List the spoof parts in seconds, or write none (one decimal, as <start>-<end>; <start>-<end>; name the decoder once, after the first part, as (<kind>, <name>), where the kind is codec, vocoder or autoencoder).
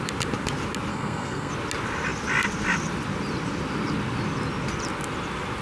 0.9-1.5 (codec, SNAC)